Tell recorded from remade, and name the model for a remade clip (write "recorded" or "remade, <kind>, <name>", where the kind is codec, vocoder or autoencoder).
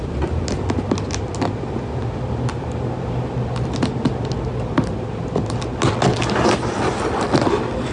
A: recorded